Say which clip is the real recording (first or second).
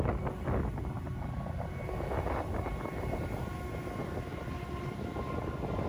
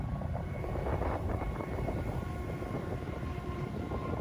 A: first